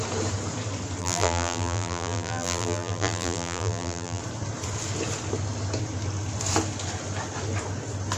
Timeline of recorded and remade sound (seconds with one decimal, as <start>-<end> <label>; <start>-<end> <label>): 0.0-1.0 recorded; 1.0-4.2 remade; 4.2-8.2 recorded